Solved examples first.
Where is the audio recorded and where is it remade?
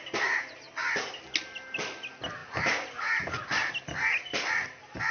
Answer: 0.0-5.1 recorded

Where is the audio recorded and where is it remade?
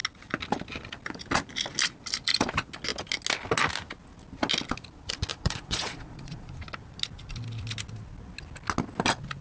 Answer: 0.0-5.3 recorded; 5.3-6.6 remade; 6.6-9.4 recorded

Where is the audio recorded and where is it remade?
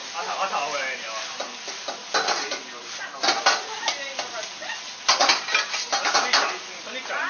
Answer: 0.0-7.3 recorded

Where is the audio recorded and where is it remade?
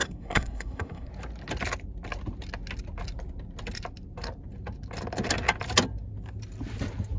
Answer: 0.0-1.1 remade; 1.1-7.2 recorded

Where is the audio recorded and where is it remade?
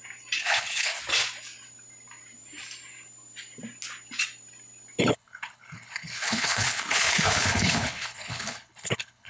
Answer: 0.0-0.4 recorded; 0.4-1.0 remade; 1.0-5.0 recorded; 5.0-9.3 remade